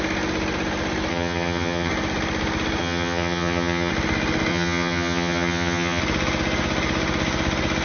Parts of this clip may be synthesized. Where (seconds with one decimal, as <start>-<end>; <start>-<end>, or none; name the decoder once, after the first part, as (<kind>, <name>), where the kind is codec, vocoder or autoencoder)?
1.1-1.9 (vocoder, HiFi-GAN); 2.8-3.9; 4.5-6.0